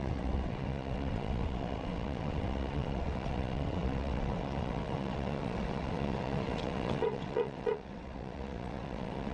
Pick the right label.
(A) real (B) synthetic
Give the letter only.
B